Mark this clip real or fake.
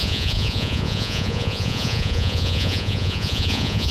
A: fake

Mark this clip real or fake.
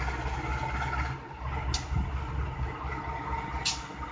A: real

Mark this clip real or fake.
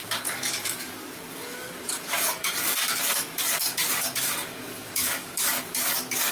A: fake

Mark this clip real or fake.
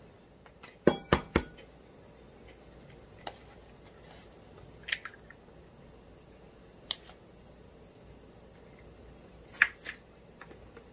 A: real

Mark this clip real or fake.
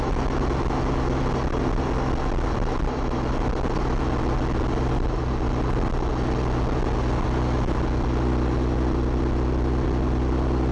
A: real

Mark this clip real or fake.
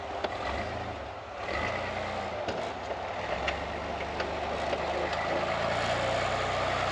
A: real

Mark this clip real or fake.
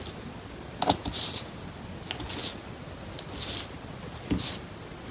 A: real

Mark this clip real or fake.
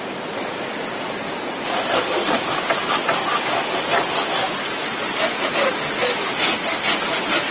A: real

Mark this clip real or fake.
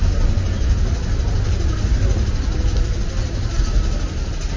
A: real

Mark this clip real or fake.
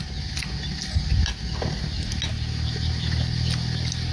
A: real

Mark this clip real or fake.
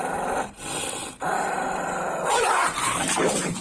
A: real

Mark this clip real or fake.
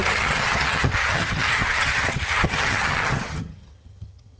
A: fake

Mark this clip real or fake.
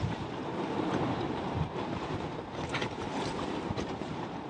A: fake